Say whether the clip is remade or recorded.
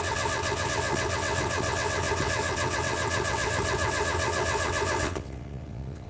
remade